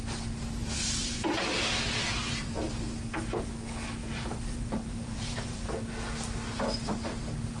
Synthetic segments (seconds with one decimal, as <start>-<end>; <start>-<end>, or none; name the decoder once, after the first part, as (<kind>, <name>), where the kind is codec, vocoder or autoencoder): 0.6-2.6 (vocoder, BigVGAN v2); 4.0-5.7

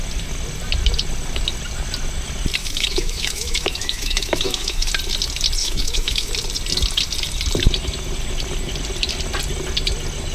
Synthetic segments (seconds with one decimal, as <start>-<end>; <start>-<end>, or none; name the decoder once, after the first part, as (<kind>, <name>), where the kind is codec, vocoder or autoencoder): 2.6-4.9 (autoencoder, DAC-VAE); 5.6-6.3

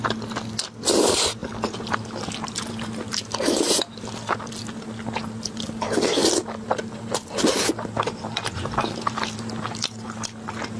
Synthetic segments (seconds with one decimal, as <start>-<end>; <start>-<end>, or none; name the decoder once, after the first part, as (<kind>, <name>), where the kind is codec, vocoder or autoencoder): none

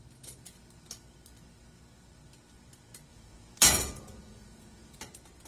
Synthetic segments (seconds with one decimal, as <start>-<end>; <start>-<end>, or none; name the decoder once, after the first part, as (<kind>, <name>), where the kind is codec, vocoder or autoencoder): 3.1-5.0 (vocoder, Vocos)

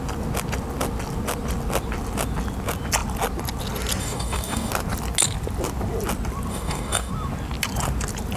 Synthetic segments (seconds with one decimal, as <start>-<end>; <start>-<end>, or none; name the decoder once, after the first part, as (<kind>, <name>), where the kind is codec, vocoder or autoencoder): 4.0-4.7 (codec, DAC); 6.5-7.1